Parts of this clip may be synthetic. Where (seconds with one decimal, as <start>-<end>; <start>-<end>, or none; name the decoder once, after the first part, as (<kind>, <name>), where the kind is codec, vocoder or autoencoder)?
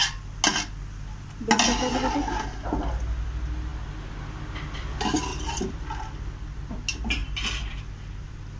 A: 5.3-6.6 (vocoder, BigVGAN v2); 7.2-8.6